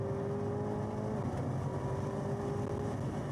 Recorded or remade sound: recorded